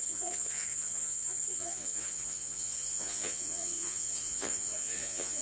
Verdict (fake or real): fake